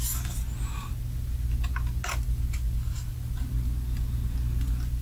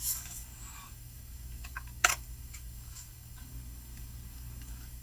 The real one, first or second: first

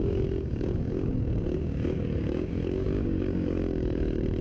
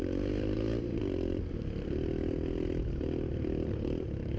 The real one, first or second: second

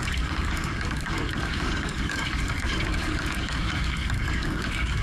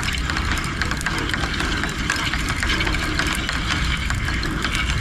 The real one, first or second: second